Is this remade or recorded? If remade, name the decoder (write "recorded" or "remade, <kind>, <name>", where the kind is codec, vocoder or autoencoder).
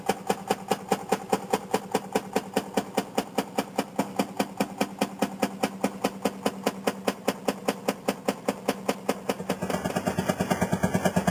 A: recorded